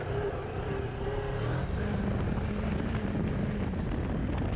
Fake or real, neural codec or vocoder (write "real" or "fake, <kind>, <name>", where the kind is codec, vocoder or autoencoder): real